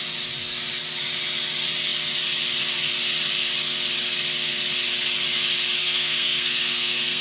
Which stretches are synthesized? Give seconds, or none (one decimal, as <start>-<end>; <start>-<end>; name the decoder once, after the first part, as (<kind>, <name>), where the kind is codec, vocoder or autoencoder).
5.8-7.2 (codec, SNAC)